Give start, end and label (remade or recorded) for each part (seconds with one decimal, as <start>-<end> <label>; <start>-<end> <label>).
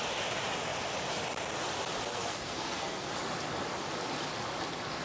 0.0-2.1 recorded; 2.1-3.1 remade; 3.1-5.0 recorded